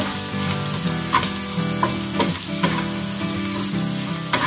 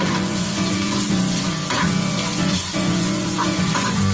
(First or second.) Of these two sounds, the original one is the first